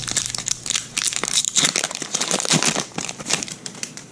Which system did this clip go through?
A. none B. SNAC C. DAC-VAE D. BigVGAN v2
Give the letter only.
D